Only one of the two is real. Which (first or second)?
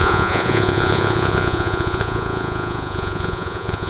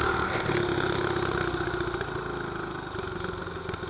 second